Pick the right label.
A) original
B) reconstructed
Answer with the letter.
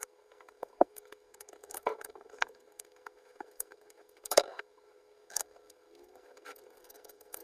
B